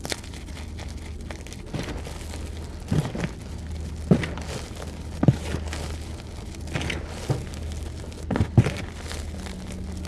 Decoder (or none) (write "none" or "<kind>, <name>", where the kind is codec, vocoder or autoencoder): none